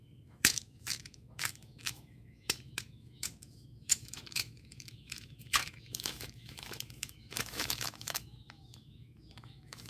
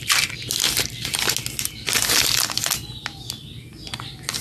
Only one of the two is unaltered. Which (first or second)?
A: second